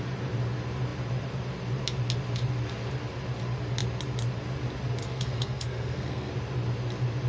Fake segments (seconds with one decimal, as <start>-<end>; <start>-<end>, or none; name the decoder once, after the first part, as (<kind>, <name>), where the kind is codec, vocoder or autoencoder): 5.0-6.3 (codec, SNAC)